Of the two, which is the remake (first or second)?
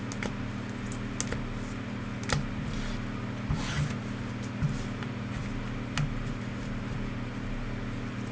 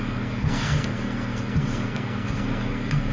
second